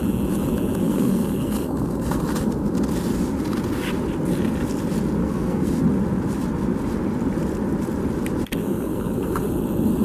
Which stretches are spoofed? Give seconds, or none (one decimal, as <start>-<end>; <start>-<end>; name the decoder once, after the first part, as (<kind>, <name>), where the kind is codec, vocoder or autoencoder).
0.8-2.2 (codec, SNAC); 5.2-5.8; 8.6-9.4